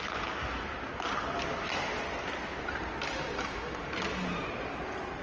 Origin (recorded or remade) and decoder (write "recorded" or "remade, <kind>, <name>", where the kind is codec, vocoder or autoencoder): recorded